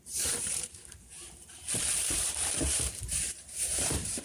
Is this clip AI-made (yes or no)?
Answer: yes